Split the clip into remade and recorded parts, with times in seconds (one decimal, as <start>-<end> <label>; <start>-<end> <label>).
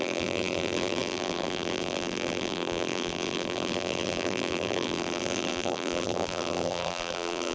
0.0-7.5 remade